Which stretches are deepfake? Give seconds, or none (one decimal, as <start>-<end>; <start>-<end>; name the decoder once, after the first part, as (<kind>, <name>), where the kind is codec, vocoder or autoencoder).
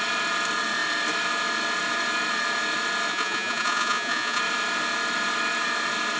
3.1-4.4 (vocoder, Vocos)